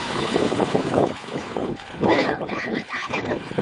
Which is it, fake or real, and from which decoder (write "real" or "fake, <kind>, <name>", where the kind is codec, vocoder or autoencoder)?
fake, codec, HILCodec